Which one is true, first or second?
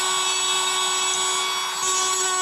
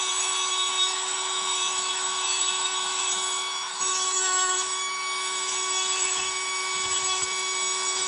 first